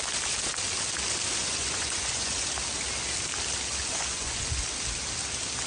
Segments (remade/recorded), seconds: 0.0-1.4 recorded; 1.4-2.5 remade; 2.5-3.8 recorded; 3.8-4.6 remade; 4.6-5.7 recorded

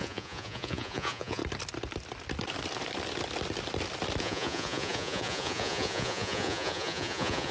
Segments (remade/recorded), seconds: 0.0-1.4 remade; 1.4-4.2 recorded; 4.2-7.5 remade

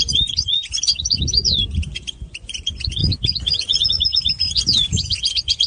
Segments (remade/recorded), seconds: 0.0-5.7 remade

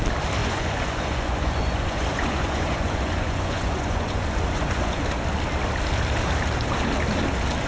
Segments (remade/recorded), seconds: 0.0-0.4 recorded; 0.4-5.0 remade; 5.0-7.7 recorded

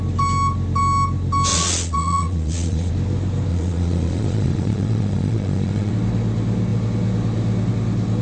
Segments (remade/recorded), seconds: 0.0-1.5 recorded; 1.5-2.9 remade; 2.9-3.5 recorded; 3.5-5.9 remade; 5.9-8.2 recorded